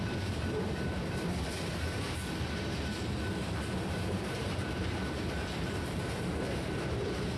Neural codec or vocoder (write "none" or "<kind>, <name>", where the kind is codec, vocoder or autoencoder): vocoder, BigVGAN v2